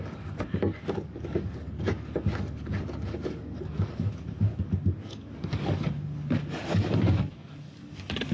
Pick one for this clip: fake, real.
fake